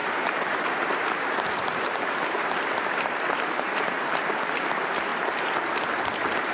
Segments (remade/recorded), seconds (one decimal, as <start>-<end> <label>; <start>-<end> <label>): 0.0-5.1 remade; 5.1-6.0 recorded; 6.0-6.5 remade